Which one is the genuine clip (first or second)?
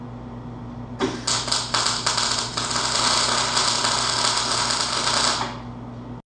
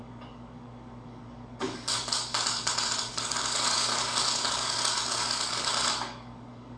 first